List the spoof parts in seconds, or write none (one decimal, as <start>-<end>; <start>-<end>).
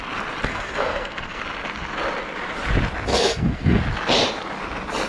0.5-1.4; 3.1-3.8